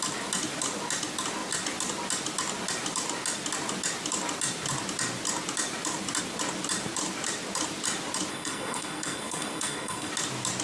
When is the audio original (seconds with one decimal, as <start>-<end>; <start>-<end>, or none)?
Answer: 0.0-8.3; 10.1-10.6